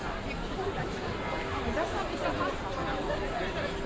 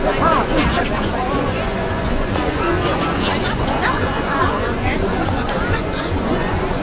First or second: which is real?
first